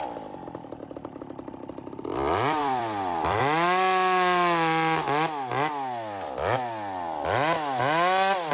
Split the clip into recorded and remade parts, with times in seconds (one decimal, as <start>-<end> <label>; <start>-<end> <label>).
0.0-2.6 recorded; 2.6-3.4 remade; 3.4-8.5 recorded